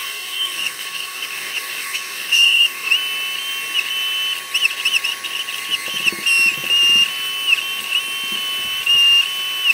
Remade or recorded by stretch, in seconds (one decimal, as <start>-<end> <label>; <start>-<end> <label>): 0.0-2.9 remade; 2.9-9.7 recorded